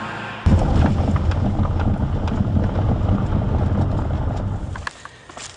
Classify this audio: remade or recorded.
recorded